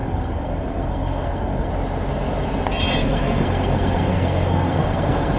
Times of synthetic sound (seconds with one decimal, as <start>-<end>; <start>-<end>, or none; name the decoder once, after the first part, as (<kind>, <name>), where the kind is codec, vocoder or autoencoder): 0.0-1.7 (codec, SNAC); 3.0-5.4